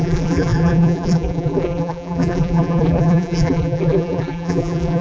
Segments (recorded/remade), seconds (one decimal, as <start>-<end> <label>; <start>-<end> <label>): 0.0-5.0 remade